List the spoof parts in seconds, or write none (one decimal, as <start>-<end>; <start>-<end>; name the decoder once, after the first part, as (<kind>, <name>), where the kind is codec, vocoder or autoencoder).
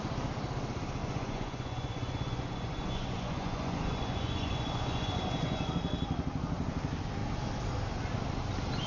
1.0-5.7 (vocoder, Vocos)